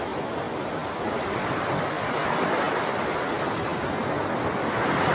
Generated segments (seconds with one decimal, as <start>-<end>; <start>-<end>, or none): none